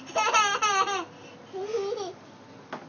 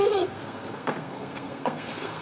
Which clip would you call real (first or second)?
first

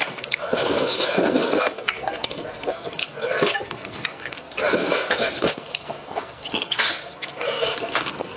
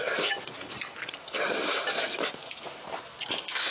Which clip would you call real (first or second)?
second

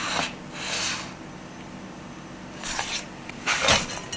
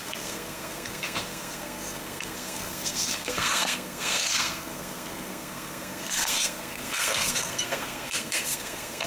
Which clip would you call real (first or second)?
first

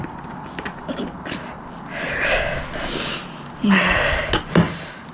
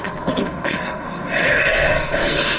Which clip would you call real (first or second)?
first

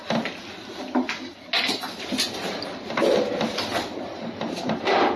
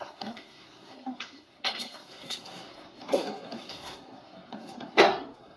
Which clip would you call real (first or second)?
first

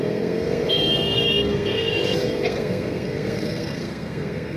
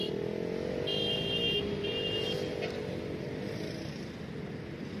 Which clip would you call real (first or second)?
second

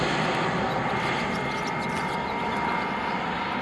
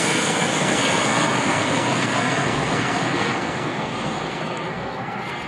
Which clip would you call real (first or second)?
first